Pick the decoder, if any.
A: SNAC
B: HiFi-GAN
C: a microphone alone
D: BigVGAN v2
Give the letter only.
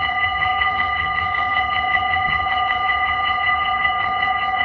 B